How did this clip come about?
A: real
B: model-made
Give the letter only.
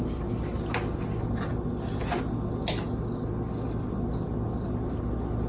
A